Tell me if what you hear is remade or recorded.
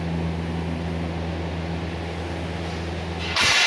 recorded